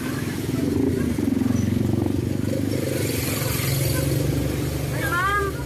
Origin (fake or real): real